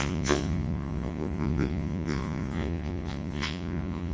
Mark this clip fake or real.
fake